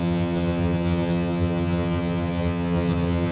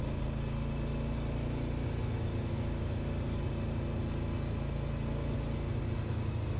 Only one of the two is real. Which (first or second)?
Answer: second